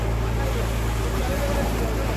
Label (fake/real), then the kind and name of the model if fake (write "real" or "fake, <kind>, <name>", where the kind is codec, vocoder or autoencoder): real